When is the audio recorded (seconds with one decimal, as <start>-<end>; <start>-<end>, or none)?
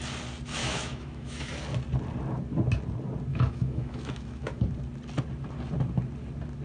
0.0-0.6; 1.5-3.3; 4.6-6.6